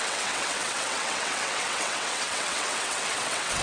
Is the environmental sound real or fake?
fake